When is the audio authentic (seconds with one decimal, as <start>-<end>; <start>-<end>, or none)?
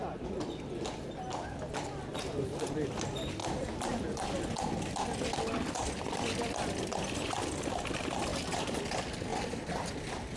0.0-2.1; 3.0-3.4; 4.1-8.3; 8.8-10.4